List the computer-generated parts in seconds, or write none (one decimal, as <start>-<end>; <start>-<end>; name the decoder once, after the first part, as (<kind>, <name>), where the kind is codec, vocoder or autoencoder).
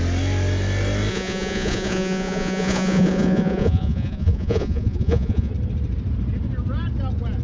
1.1-5.5 (vocoder, Vocos)